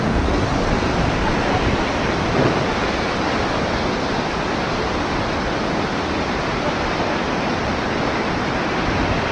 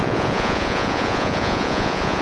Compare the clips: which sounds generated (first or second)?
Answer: second